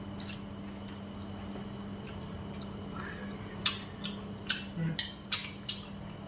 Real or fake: real